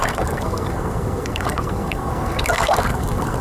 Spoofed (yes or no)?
yes